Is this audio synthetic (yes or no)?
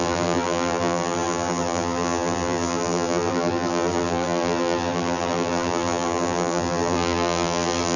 yes